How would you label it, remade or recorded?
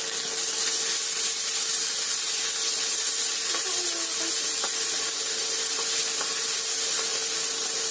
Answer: recorded